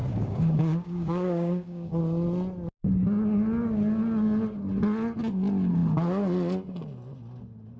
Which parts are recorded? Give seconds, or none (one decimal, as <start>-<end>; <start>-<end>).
2.0-7.8